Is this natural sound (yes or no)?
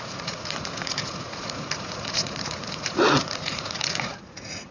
no